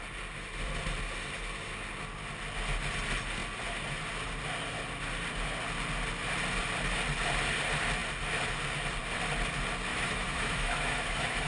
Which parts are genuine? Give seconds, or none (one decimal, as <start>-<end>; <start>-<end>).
0.0-9.9